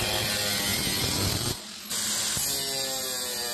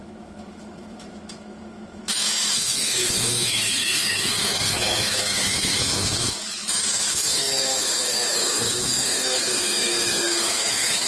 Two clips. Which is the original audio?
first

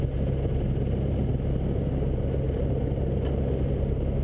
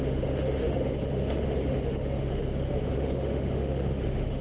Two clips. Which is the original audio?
first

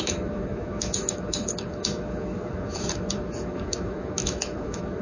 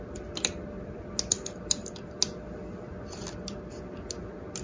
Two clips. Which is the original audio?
second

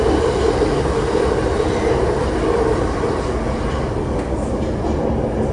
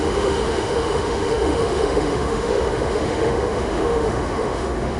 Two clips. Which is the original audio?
first